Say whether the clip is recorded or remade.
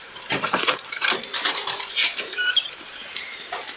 remade